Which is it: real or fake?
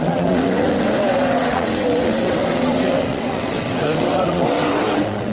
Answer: fake